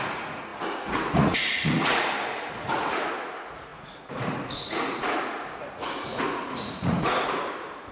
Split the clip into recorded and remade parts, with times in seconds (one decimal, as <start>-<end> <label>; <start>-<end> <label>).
0.0-7.9 remade